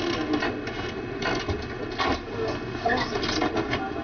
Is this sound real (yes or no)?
yes